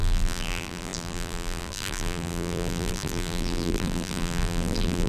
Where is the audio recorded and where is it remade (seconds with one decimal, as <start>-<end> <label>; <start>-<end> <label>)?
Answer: 0.0-5.1 remade